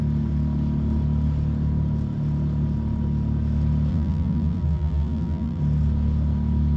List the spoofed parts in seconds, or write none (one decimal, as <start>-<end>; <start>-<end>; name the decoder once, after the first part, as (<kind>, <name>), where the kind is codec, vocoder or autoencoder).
3.9-5.6 (vocoder, BigVGAN v2)